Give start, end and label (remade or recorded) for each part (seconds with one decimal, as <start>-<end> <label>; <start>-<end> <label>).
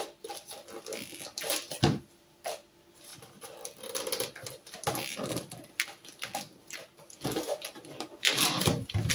0.0-9.1 recorded